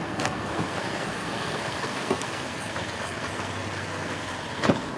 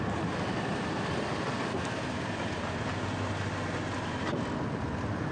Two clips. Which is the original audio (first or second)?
second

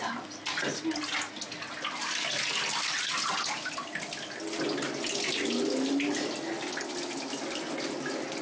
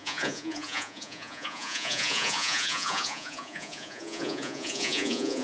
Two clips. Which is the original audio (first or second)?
first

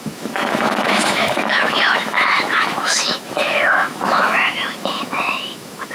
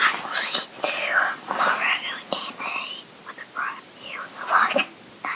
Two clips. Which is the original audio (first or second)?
second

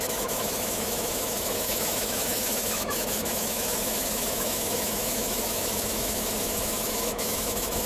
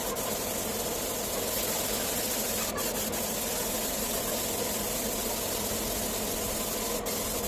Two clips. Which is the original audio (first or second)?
second